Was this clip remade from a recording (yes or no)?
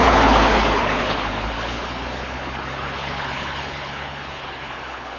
yes